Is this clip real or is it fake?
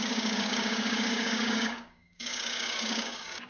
fake